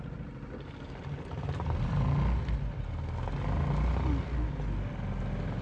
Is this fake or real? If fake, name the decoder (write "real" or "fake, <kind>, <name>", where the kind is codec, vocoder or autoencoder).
real